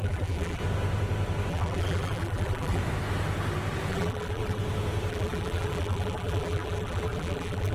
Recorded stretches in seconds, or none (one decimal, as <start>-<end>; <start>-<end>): 0.6-1.5; 2.8-3.9; 4.6-5.1